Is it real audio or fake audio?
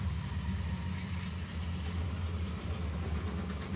real